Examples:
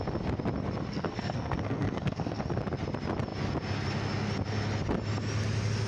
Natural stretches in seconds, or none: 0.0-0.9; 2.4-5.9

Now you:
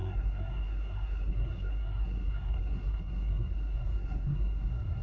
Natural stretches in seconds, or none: none

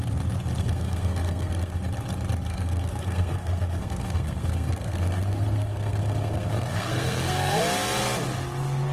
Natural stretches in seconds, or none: 0.0-0.6; 1.8-2.5; 7.6-8.9

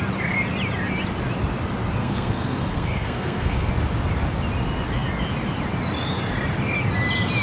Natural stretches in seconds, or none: 0.0-2.0; 3.7-7.4